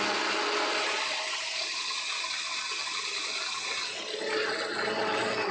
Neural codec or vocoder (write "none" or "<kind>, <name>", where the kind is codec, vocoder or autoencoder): none